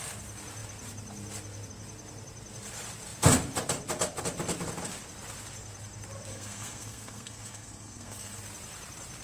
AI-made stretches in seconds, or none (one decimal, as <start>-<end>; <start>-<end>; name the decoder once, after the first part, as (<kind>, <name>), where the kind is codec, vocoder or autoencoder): 6.3-8.4 (codec, SNAC)